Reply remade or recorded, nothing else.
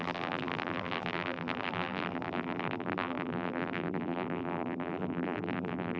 remade